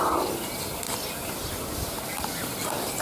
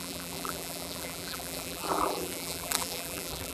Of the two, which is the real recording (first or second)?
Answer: first